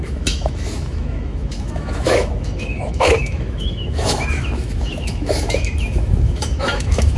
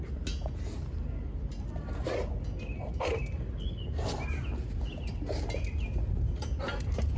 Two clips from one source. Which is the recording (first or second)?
second